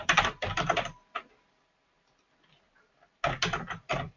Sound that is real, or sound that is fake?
real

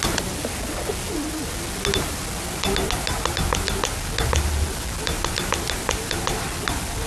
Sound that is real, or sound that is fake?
real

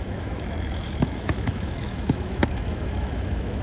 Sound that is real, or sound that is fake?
fake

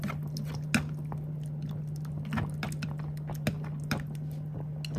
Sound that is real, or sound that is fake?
real